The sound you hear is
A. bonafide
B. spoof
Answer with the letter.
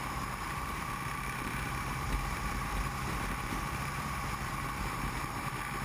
B